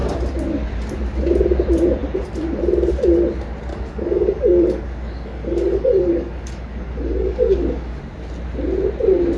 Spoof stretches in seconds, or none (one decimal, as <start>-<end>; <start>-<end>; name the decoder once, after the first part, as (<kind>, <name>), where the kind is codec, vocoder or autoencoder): 3.7-8.0 (codec, DAC)